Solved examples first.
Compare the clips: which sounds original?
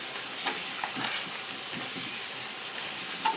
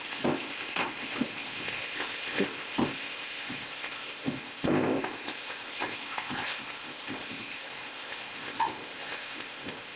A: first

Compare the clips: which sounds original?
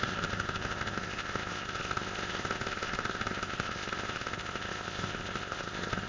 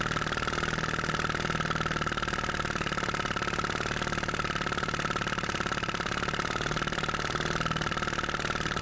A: second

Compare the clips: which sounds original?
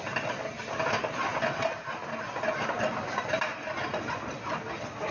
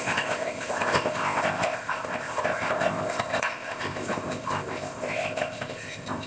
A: first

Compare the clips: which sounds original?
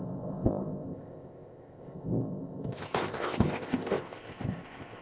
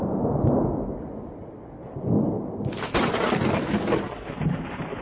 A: second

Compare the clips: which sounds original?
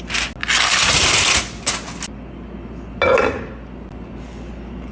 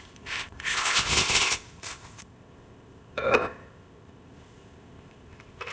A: first